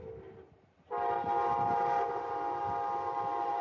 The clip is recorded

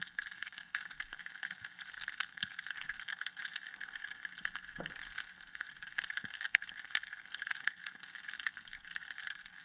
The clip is remade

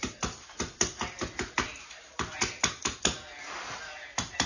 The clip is recorded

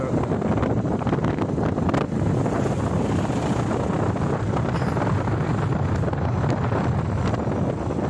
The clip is recorded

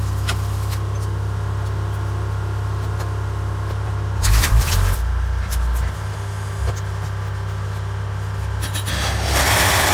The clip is recorded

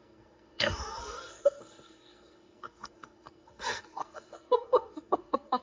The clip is remade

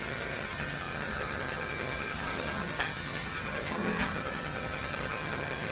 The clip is remade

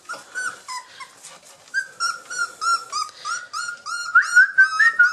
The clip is recorded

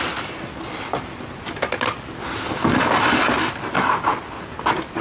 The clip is recorded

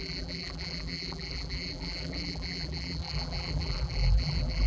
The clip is remade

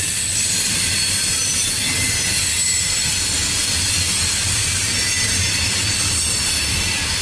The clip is recorded